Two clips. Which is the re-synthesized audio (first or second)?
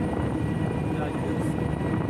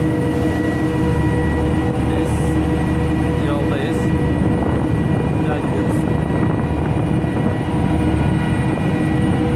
first